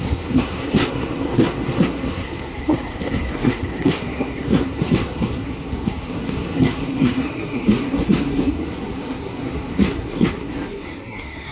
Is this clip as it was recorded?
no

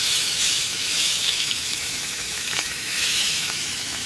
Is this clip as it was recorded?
no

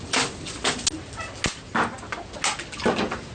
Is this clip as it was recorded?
yes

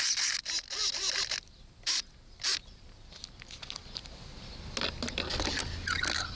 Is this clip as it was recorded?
yes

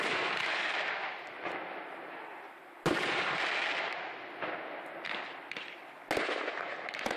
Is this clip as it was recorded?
yes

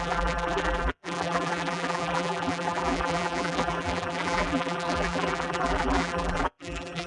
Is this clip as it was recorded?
no